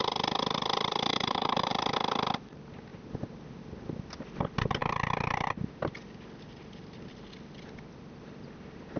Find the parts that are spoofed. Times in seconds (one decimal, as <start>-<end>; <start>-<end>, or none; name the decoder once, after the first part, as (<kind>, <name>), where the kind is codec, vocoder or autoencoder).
1.1-1.7 (vocoder, BigVGAN v2)